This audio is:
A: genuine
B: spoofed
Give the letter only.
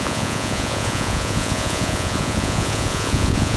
B